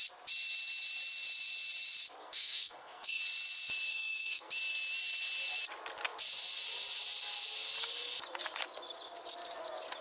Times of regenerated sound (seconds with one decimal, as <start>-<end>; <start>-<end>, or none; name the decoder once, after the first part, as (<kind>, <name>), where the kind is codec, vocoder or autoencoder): 2.2-3.2 (codec, SNAC); 3.9-4.5